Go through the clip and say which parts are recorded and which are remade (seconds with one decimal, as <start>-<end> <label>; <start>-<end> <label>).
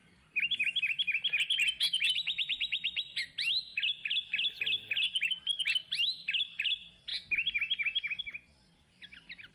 0.0-9.5 recorded